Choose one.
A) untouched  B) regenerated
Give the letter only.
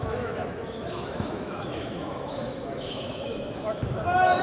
B